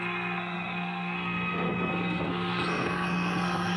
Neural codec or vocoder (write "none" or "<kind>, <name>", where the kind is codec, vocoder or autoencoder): codec, SNAC